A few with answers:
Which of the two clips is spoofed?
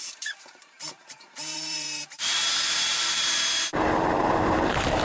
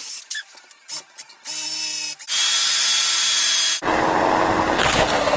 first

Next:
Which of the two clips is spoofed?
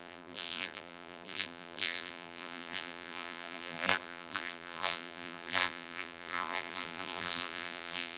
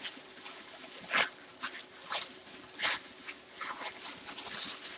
first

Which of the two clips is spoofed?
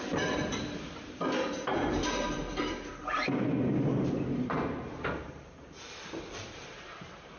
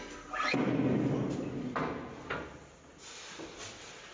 first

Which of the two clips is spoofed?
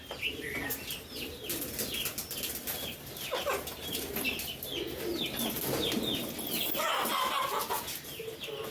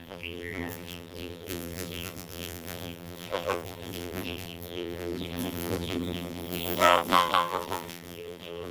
second